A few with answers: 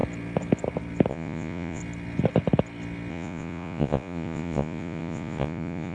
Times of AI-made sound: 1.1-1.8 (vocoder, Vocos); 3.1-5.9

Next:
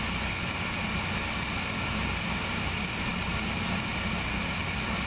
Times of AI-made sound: none

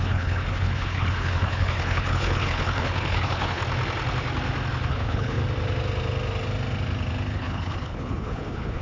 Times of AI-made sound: 0.0-3.6 (codec, HILCodec); 4.9-5.4; 7.3-8.8

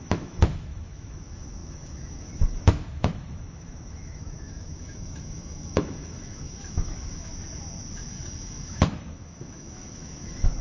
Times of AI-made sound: 0.0-7.3 (autoencoder, DAC-VAE); 8.1-10.6

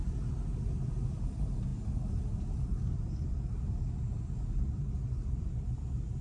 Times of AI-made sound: none

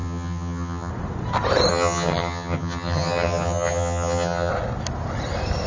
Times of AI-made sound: 0.0-0.9 (vocoder, HiFi-GAN); 1.7-4.5

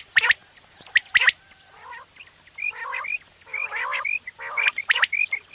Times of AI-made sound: none

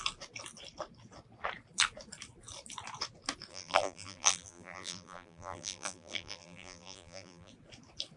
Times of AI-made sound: 3.5-7.5 (vocoder, BigVGAN v2)